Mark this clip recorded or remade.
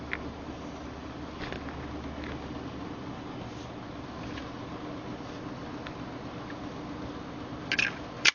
recorded